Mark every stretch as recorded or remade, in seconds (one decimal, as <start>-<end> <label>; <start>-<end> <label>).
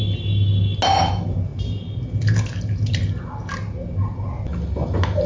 0.0-5.3 recorded